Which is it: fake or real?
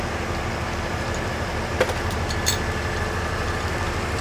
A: real